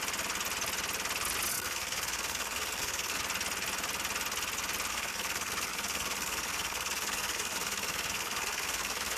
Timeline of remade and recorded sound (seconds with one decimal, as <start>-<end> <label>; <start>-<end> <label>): 0.0-1.5 recorded; 1.5-3.2 remade; 3.2-4.9 recorded; 4.9-9.2 remade

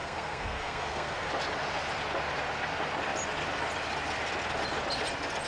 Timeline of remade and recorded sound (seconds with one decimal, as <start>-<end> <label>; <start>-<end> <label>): 0.0-1.3 remade; 1.3-5.5 recorded

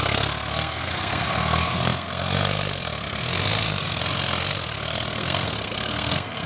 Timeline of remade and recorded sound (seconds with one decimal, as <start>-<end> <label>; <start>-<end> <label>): 0.0-6.5 remade